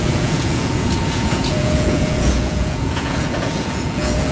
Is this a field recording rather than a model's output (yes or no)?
no